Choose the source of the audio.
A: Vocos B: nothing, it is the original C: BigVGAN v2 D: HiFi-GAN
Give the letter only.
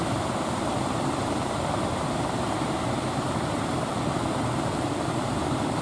C